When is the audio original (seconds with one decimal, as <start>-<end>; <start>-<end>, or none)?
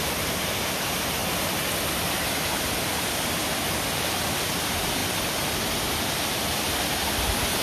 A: 0.0-7.6